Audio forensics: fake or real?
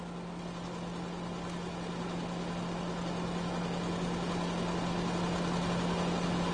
real